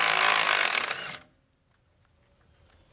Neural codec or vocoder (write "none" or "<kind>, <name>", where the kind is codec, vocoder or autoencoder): none